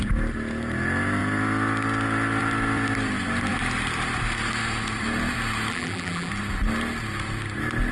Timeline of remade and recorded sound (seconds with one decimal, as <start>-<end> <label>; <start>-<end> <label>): 0.0-5.7 recorded; 5.7-6.3 remade; 6.3-7.9 recorded